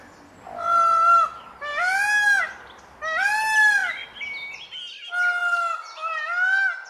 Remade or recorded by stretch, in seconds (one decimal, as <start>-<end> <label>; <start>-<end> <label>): 0.0-1.7 recorded; 1.7-2.4 remade; 2.4-6.9 recorded